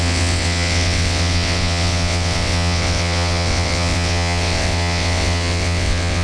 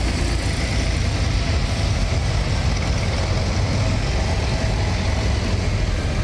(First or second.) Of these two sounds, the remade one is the first